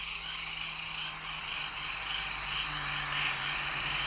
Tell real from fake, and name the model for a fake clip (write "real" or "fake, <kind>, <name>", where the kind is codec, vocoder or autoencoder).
real